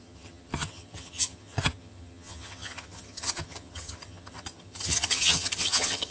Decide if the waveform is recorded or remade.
remade